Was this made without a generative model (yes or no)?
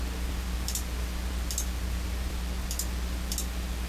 yes